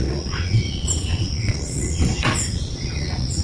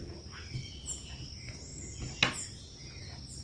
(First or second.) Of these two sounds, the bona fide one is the second